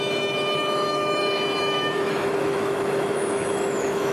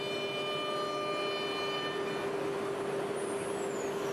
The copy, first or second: first